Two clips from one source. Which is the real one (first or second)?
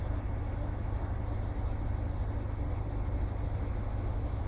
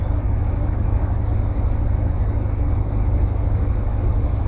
first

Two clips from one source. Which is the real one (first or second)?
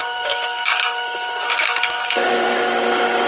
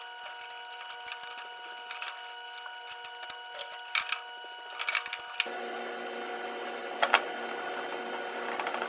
second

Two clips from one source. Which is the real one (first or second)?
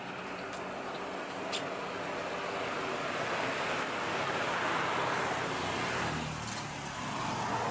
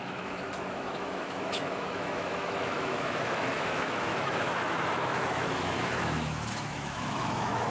first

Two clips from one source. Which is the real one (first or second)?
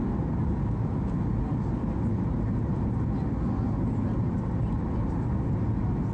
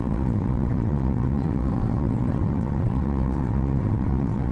first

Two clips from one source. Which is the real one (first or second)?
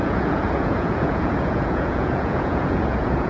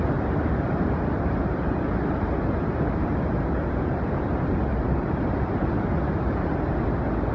second